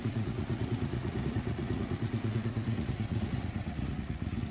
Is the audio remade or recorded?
remade